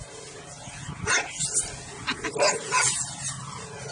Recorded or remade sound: recorded